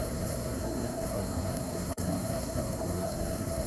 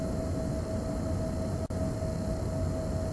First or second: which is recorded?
second